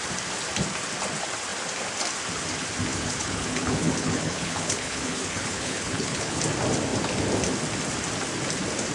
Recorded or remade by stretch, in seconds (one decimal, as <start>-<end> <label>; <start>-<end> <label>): 0.0-2.9 recorded; 2.9-6.4 remade; 6.4-8.9 recorded